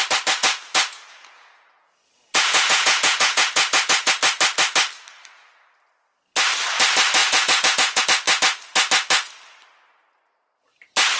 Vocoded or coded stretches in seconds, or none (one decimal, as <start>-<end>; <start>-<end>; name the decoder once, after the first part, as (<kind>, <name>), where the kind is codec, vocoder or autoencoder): 0.4-4.1 (vocoder, Vocos); 7.2-8.0